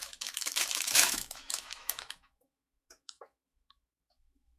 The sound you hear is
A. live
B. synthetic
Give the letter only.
B